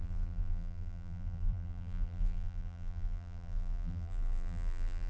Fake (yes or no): yes